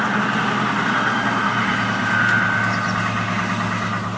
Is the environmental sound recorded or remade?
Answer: recorded